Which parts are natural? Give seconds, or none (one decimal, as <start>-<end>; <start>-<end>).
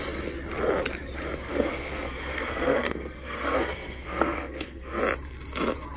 0.0-1.5; 5.0-6.0